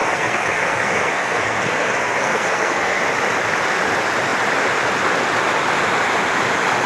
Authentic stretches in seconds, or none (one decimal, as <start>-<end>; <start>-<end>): 3.0-6.9